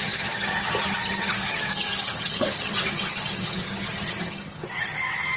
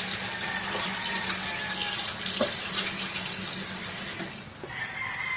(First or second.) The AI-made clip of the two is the first